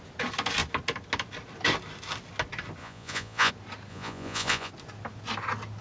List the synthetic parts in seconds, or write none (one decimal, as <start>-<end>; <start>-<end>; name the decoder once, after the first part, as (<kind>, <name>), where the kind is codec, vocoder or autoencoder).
2.8-3.5 (vocoder, Vocos); 3.9-4.7